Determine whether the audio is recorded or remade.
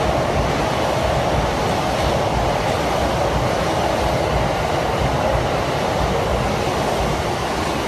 recorded